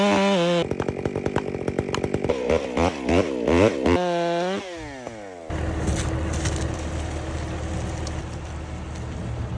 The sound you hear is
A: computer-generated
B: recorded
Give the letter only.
B